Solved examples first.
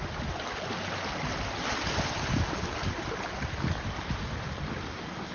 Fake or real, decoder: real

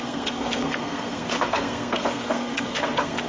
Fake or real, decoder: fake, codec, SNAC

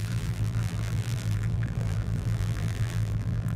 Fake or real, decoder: fake, vocoder, BigVGAN v2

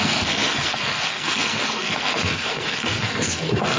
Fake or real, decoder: fake, codec, SNAC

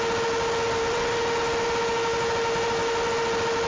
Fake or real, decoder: real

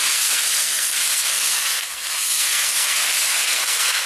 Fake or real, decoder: fake, codec, SNAC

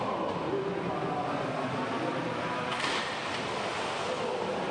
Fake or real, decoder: real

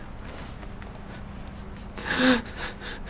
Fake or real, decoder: real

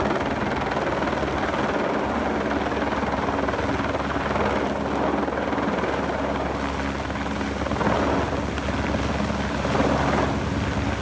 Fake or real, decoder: real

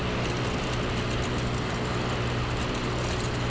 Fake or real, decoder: real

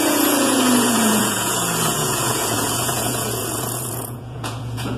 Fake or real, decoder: fake, vocoder, Vocos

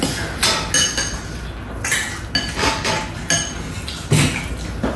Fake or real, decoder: real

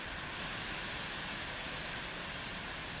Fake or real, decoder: real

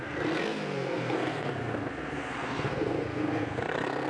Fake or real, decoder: fake, codec, SNAC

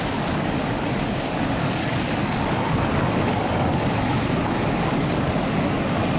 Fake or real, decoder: fake, codec, DAC